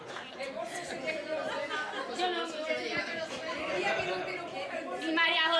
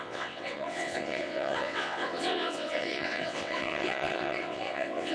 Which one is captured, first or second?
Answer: first